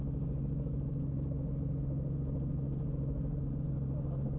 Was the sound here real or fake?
real